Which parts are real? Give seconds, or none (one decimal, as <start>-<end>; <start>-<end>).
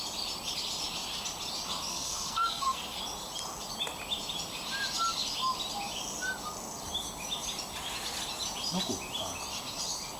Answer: 0.0-1.9; 3.0-10.2